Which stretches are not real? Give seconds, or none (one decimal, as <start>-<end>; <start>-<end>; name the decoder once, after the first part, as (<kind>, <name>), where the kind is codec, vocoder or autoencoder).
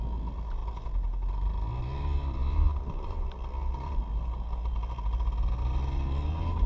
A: none